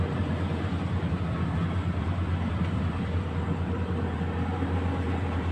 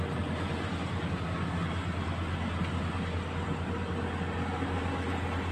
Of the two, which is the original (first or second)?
second